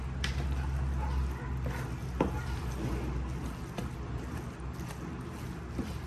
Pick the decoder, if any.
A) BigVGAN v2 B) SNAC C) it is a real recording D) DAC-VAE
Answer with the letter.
C